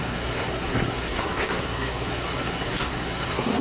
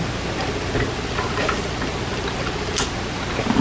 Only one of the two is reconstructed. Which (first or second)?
first